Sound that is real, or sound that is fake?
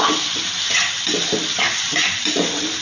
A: real